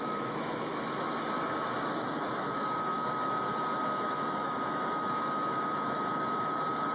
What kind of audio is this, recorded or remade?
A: remade